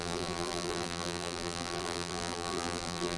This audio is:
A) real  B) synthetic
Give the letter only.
B